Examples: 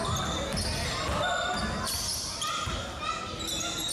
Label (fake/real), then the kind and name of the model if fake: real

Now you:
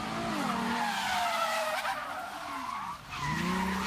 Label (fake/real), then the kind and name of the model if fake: real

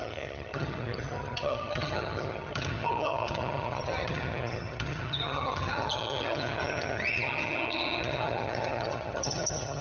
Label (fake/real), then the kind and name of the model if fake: fake, vocoder, HiFi-GAN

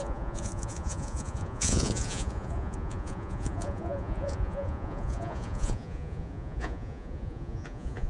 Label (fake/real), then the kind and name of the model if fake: fake, vocoder, Vocos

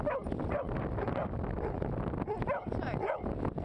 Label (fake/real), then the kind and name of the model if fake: real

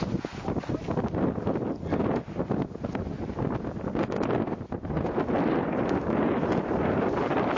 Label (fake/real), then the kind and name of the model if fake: real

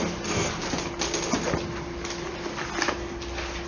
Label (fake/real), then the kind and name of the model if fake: real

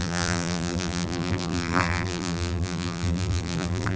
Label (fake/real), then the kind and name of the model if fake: fake, vocoder, BigVGAN v2